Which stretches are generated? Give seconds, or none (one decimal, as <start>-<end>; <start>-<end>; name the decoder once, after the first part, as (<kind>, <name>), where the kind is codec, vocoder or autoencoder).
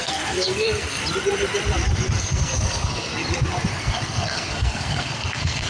0.0-1.0 (codec, SNAC); 2.2-3.1; 3.7-5.7